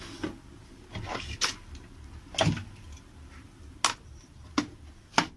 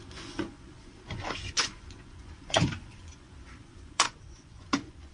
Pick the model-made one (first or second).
second